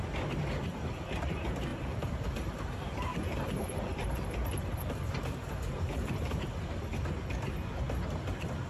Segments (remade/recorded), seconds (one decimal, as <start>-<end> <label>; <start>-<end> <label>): 0.0-1.7 recorded; 1.7-6.4 remade; 6.4-8.7 recorded